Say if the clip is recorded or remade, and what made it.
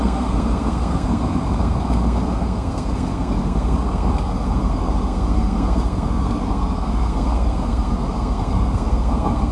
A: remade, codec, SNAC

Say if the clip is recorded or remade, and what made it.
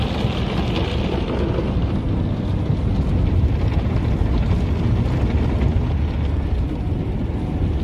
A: recorded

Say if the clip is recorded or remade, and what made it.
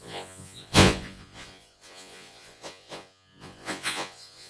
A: remade, vocoder, Vocos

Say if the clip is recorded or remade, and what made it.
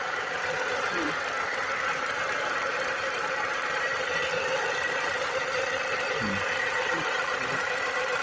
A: remade, vocoder, BigVGAN v2